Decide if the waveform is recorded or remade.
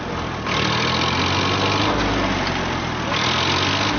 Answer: recorded